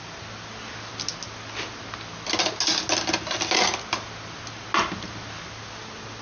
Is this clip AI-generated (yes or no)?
no